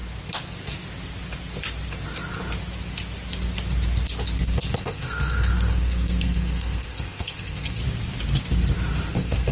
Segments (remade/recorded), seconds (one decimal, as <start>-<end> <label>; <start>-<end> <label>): 0.0-4.8 recorded; 4.8-7.8 remade; 7.8-9.1 recorded; 9.1-9.5 remade